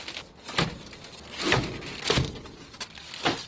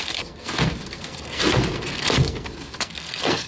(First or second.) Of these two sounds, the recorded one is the first